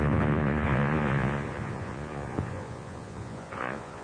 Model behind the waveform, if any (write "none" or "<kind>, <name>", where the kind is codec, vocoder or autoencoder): vocoder, Vocos